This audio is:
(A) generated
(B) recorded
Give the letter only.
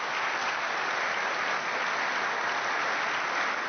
B